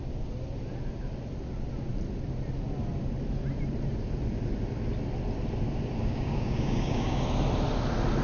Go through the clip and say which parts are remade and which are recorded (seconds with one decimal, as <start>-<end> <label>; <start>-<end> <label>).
0.0-6.0 recorded; 6.0-7.2 remade; 7.2-8.2 recorded